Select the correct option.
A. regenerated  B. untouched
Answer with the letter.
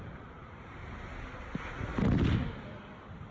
B